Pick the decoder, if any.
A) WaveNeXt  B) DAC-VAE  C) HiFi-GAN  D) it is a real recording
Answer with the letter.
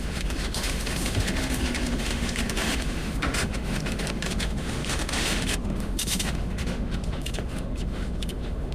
B